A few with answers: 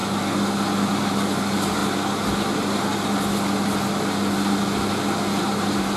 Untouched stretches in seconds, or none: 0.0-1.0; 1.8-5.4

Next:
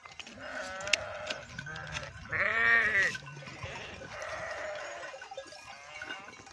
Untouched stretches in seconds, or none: 0.0-1.8; 5.5-6.5

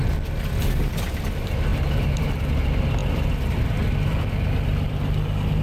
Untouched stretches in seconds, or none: 0.0-3.0

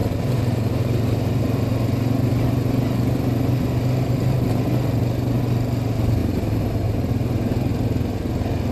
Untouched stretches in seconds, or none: 1.4-6.2; 7.1-8.7

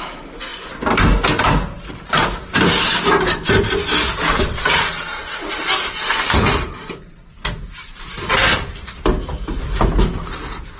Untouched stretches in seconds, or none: 0.0-2.4; 3.9-5.2; 8.3-10.8

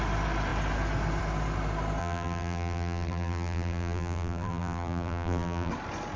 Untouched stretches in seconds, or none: 0.0-2.0; 5.7-6.2

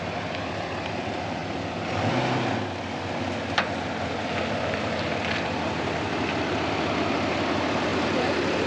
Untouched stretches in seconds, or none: 0.0-8.7

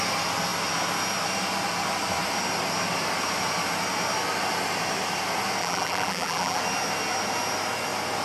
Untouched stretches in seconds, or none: 0.0-5.6; 6.6-8.2